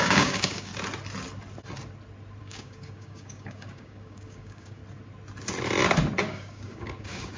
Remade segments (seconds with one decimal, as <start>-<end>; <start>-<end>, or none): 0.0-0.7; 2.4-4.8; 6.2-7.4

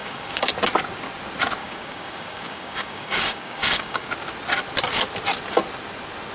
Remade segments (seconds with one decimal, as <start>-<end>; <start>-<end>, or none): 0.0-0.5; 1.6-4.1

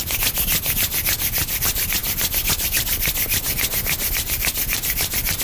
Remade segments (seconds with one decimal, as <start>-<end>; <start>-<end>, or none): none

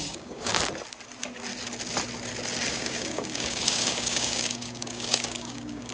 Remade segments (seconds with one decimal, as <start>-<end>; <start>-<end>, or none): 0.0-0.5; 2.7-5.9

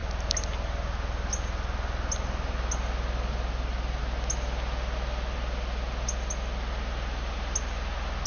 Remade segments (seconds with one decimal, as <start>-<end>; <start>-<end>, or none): none

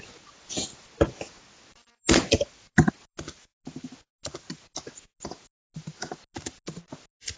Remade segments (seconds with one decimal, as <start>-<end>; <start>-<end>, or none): none